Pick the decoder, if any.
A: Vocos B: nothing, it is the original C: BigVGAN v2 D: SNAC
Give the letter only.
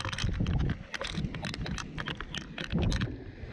B